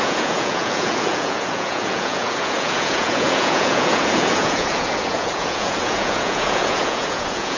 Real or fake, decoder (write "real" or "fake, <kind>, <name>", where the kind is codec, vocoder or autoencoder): fake, vocoder, Vocos